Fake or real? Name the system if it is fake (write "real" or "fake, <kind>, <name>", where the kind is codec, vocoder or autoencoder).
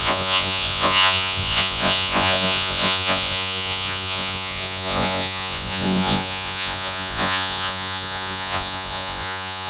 fake, vocoder, Vocos